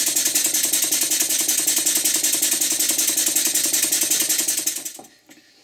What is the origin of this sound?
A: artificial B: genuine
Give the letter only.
B